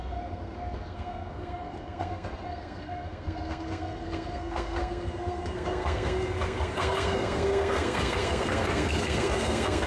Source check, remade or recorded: remade